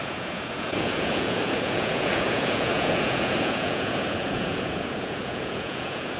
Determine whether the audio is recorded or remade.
remade